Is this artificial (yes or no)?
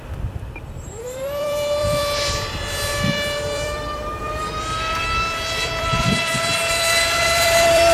yes